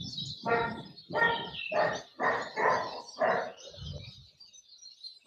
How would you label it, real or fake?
real